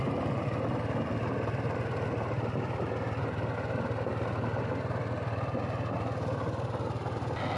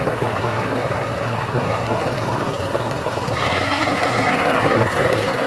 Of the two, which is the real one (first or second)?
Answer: first